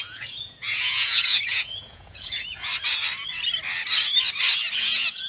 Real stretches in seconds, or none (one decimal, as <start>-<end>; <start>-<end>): 2.7-4.8